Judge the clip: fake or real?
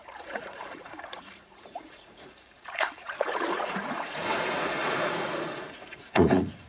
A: fake